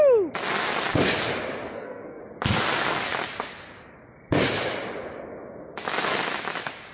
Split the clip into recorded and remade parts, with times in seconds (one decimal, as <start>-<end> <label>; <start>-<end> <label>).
0.0-1.6 recorded; 1.6-2.2 remade; 2.2-6.9 recorded